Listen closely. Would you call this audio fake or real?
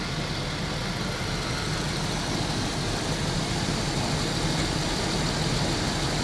real